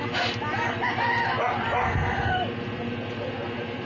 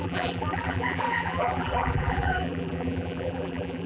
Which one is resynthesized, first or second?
second